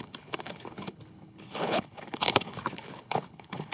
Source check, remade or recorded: remade